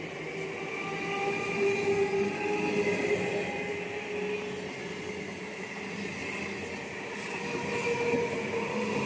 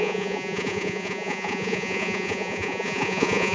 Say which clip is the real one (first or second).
first